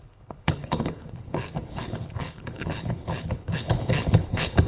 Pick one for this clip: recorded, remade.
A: remade